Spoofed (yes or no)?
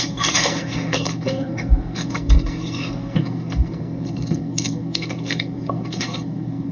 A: yes